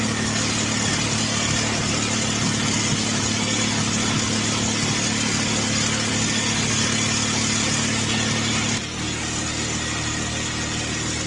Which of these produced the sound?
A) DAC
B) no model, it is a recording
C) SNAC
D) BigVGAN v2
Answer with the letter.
B